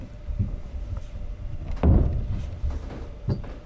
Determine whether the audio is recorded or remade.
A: remade